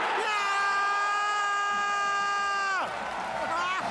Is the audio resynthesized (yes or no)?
no